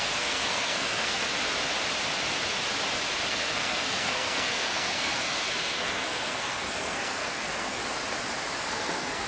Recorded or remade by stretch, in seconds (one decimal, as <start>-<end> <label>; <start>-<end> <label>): 0.0-1.2 remade; 1.2-3.3 recorded; 3.3-7.8 remade; 7.8-8.7 recorded; 8.7-9.3 remade